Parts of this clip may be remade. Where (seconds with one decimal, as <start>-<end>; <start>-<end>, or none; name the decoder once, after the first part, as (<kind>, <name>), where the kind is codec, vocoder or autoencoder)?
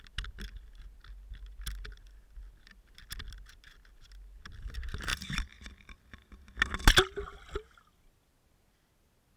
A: none